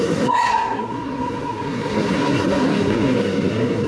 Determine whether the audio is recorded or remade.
remade